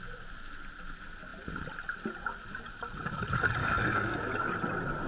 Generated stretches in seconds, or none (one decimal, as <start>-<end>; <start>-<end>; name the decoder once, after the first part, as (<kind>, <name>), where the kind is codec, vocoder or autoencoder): 3.6-4.3 (codec, DAC)